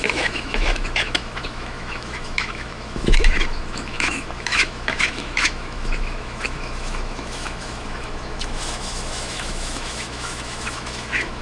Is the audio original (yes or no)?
no